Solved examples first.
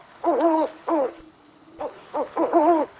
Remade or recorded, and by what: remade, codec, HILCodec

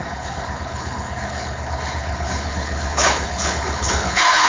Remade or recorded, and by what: remade, codec, HILCodec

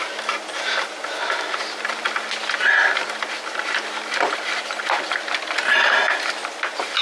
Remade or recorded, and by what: recorded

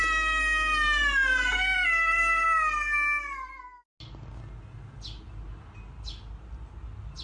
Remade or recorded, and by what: recorded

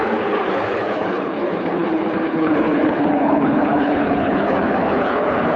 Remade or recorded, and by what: remade, codec, HILCodec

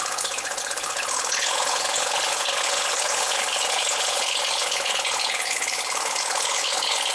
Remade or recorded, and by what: remade, codec, HILCodec